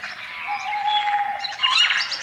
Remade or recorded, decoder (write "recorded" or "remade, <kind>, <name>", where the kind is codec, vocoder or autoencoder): recorded